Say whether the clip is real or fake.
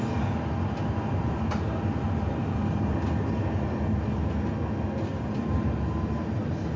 real